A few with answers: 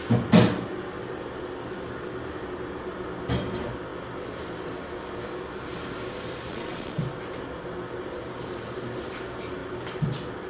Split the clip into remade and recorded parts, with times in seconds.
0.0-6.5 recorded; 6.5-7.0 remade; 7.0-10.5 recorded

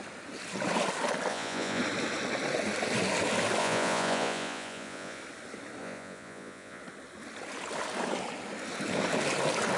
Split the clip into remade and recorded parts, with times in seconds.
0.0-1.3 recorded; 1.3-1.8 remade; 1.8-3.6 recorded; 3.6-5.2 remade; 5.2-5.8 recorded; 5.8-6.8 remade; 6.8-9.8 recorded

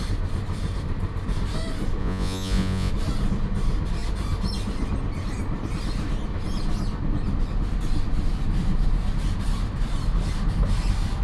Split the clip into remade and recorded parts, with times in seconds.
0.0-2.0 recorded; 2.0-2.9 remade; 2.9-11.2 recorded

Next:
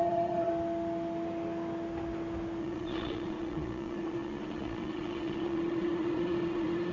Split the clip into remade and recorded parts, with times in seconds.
0.0-0.5 remade; 0.5-2.6 recorded; 2.6-6.9 remade

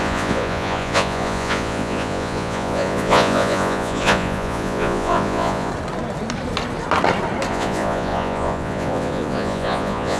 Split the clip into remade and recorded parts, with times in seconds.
0.0-5.7 remade; 5.7-7.5 recorded; 7.5-10.2 remade

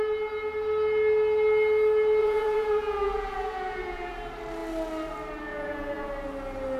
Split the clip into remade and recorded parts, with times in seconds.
0.0-2.2 recorded; 2.2-4.1 remade; 4.1-5.5 recorded; 5.5-6.1 remade; 6.1-6.8 recorded

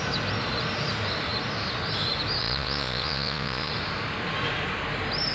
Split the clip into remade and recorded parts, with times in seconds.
0.0-2.4 recorded; 2.4-3.7 remade; 3.7-5.3 recorded

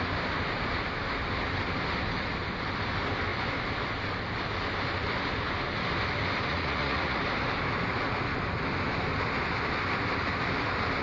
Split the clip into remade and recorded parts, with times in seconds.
0.0-6.5 recorded; 6.5-7.2 remade; 7.2-11.0 recorded